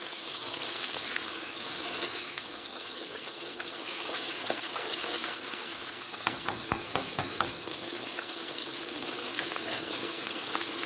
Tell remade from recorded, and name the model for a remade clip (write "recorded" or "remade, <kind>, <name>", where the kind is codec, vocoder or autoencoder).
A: remade, codec, SNAC